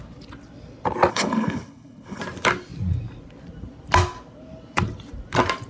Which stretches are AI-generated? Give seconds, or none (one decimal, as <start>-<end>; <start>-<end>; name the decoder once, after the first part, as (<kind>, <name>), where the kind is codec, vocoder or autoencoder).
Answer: 1.1-2.2 (codec, HILCodec)